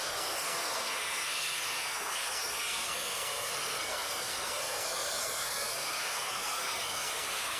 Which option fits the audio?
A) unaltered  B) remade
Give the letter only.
B